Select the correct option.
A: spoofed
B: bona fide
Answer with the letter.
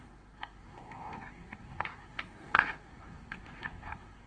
A